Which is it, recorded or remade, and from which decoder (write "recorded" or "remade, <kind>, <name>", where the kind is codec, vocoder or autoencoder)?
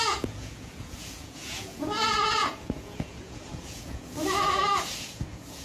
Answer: remade, vocoder, Vocos